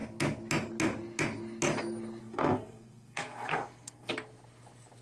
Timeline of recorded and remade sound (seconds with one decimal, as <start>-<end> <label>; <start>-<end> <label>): 0.0-2.2 recorded; 2.2-4.1 remade; 4.1-5.0 recorded